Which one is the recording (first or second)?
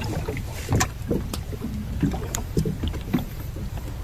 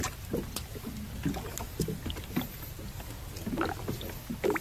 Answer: second